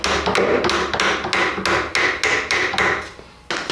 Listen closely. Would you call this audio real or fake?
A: real